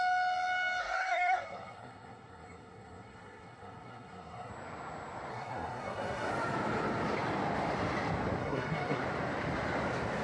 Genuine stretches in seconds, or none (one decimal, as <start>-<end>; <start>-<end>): 0.0-0.8; 4.5-5.3; 6.3-8.4; 9.0-10.2

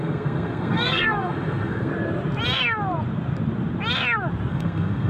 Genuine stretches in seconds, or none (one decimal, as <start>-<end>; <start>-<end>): 1.9-4.5